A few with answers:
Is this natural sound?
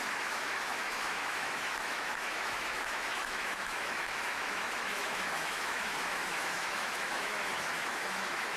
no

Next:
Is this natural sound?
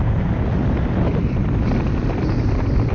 yes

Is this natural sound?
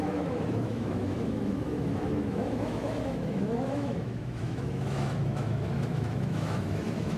no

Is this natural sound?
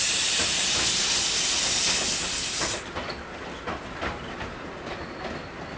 yes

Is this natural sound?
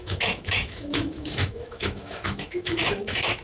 no